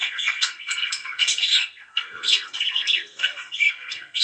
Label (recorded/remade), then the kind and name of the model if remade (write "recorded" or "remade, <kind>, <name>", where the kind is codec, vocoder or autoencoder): remade, codec, SNAC